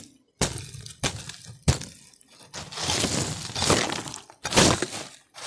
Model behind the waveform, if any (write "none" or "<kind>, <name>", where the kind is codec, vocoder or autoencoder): none